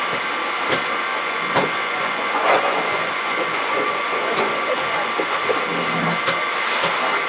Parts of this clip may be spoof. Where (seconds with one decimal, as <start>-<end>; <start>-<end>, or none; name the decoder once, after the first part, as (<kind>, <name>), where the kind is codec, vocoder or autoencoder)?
1.1-5.1 (vocoder, Vocos)